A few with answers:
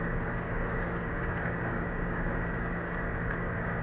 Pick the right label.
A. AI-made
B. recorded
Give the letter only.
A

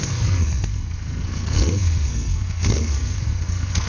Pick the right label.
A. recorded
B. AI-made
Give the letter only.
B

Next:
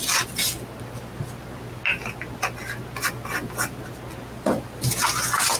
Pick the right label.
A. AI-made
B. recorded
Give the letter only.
B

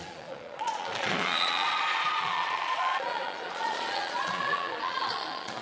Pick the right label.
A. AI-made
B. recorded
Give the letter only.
A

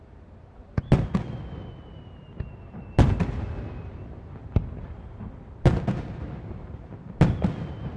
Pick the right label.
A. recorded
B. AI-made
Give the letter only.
A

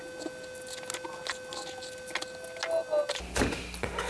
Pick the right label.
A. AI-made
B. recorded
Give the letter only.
B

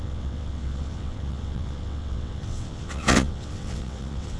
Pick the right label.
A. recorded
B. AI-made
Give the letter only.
B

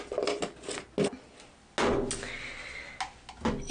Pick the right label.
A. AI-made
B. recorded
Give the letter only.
B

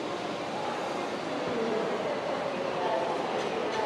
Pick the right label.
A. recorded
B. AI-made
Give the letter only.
A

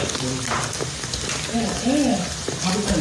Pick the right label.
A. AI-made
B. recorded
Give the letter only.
B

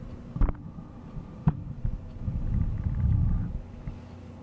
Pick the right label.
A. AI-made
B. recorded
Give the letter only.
B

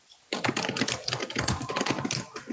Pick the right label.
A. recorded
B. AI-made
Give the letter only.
A